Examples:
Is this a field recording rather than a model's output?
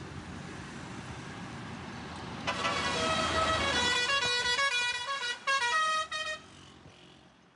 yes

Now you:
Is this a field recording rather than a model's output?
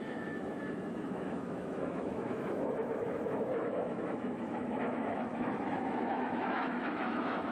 no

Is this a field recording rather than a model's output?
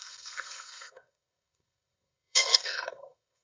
no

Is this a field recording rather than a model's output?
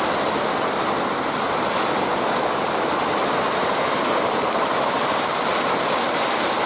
yes